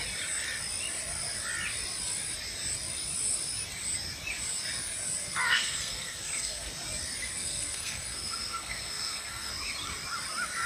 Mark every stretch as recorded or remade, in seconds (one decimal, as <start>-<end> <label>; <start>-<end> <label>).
0.0-5.2 recorded; 5.2-6.7 remade; 6.7-7.3 recorded; 7.3-9.5 remade; 9.5-10.7 recorded